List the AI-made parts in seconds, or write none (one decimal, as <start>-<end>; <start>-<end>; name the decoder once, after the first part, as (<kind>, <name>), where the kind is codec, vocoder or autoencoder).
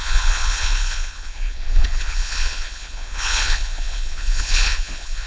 0.0-5.3 (vocoder, Vocos)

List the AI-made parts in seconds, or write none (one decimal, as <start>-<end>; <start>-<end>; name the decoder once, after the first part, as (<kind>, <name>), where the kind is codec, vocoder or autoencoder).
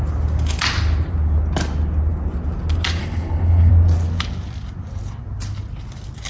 3.0-3.7 (codec, HILCodec)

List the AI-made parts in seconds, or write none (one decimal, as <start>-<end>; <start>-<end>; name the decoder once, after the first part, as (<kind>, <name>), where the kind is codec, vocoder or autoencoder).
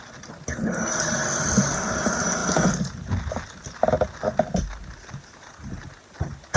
none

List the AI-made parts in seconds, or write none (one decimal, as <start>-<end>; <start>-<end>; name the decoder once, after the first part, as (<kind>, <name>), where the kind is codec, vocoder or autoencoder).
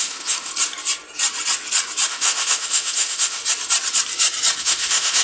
0.0-0.5 (autoencoder, DAC-VAE); 2.1-3.4; 4.6-5.2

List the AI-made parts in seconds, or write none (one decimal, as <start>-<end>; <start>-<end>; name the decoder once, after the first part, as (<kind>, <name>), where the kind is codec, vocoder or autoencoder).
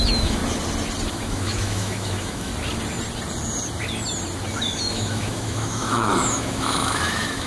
0.0-0.4 (autoencoder, DAC-VAE); 1.1-2.5; 4.8-7.5